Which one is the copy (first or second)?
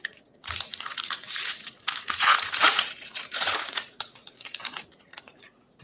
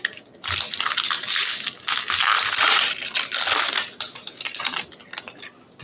first